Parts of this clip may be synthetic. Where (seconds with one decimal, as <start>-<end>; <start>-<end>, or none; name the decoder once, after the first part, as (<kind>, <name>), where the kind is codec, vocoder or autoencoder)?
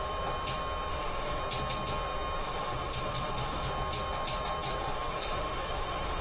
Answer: 0.9-1.4 (autoencoder, DAC-VAE); 2.4-3.7; 4.8-6.2